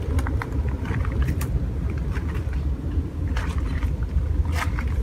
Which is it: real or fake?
real